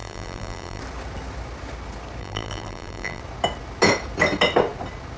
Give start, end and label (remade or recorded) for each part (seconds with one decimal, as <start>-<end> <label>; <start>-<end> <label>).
0.0-0.8 remade; 0.8-2.2 recorded; 2.2-3.2 remade; 3.2-5.2 recorded

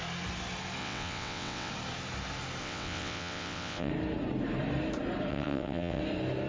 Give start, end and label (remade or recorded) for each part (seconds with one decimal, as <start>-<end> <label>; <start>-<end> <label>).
0.0-0.8 recorded; 0.8-1.7 remade; 1.7-2.6 recorded; 2.6-3.9 remade; 3.9-5.3 recorded; 5.3-6.0 remade; 6.0-6.5 recorded

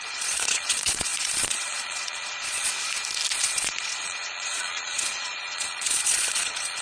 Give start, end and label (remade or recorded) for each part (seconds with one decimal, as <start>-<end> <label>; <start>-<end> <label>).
0.0-2.7 remade; 2.7-3.3 recorded; 3.3-6.8 remade

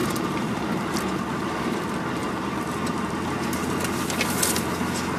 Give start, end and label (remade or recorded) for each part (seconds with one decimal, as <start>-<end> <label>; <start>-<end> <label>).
0.0-0.6 remade; 0.6-2.2 recorded; 2.2-3.8 remade; 3.8-5.2 recorded

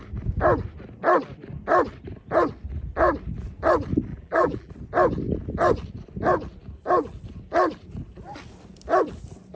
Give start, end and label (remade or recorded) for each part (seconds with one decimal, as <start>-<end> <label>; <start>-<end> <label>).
0.0-4.1 recorded; 4.1-4.7 remade; 4.7-9.5 recorded

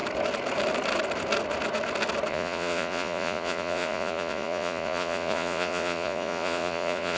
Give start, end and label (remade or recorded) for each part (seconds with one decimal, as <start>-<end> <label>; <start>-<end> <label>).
0.0-2.3 recorded; 2.3-7.2 remade